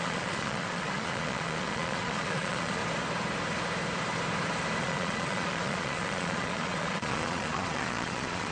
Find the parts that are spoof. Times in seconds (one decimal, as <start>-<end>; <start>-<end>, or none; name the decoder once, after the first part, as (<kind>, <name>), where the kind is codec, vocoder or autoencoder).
0.0-2.8 (vocoder, Vocos); 4.8-8.5